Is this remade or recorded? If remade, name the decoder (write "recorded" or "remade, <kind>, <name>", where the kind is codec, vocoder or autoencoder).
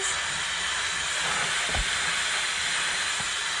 recorded